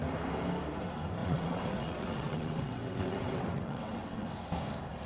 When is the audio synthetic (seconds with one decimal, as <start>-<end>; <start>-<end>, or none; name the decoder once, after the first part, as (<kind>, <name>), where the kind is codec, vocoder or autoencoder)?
1.2-4.3 (vocoder, WaveNeXt)